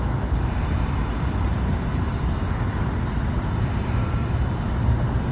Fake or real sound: real